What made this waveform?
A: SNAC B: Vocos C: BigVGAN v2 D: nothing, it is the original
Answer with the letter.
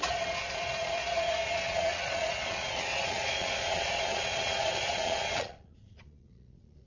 B